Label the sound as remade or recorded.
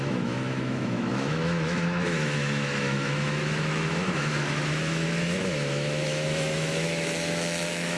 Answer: remade